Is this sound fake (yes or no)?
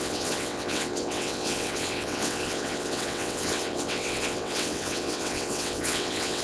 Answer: yes